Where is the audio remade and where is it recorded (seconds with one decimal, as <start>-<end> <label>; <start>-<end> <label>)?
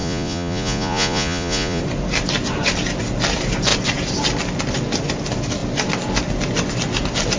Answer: 0.0-1.8 remade; 1.8-7.4 recorded